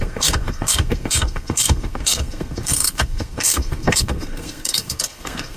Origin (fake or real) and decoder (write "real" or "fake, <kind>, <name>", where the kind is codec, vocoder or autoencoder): fake, codec, SNAC